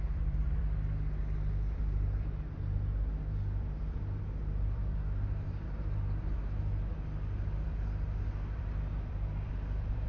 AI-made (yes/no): yes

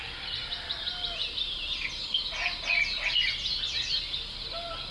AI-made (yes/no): no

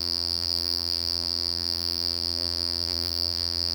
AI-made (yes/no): yes